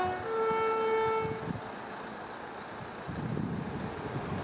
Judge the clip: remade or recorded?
recorded